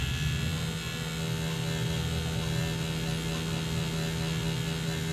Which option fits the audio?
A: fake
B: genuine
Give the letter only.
B